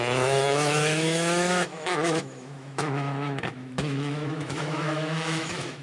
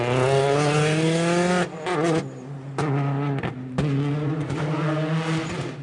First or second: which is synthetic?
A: first